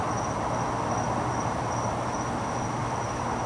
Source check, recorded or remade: recorded